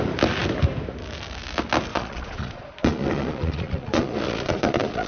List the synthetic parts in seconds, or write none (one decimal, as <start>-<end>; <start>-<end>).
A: 1.9-5.1